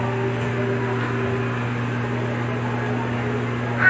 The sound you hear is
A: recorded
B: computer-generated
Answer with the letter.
A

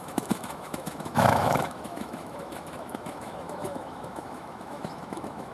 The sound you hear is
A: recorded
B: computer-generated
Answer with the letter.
B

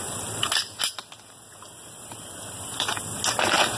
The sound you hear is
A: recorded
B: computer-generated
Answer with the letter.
A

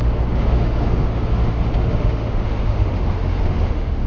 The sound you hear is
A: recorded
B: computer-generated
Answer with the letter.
B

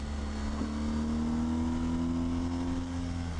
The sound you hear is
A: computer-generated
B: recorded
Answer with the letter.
B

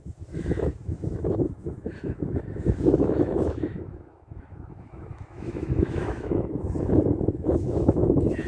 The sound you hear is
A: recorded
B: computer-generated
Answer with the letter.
B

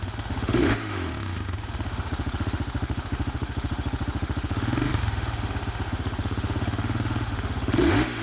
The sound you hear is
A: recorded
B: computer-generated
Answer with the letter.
B